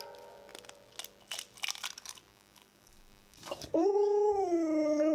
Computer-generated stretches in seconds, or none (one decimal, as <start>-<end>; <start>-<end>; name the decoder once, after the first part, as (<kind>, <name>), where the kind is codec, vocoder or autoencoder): 2.3-4.3 (codec, DAC)